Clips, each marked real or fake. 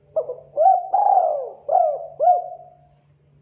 real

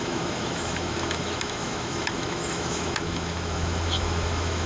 fake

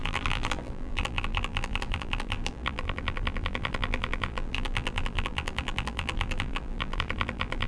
fake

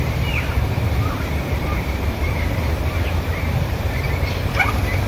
fake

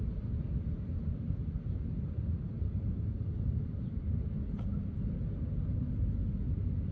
real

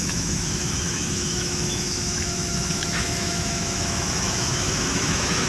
fake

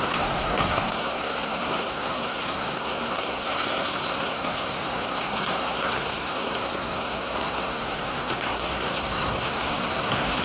fake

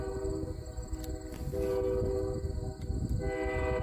real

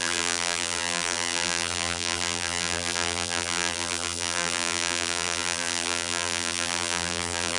fake